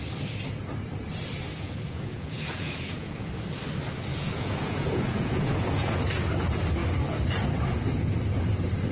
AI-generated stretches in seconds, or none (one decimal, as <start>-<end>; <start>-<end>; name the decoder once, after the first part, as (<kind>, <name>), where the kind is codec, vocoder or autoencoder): 1.5-3.3 (vocoder, Vocos); 4.1-6.3

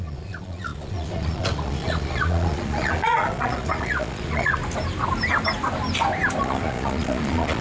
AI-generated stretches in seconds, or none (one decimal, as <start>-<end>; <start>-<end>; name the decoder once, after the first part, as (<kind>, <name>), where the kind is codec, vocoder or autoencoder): 0.0-4.6 (vocoder, Vocos); 6.4-7.6